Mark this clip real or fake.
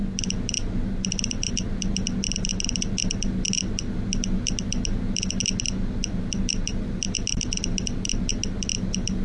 real